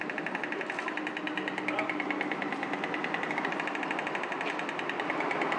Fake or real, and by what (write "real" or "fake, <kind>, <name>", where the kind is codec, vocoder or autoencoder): real